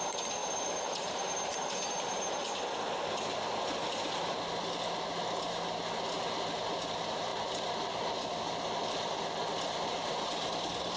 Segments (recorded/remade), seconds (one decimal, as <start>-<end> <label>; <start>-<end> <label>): 0.0-0.4 recorded; 0.4-2.5 remade; 2.5-11.0 recorded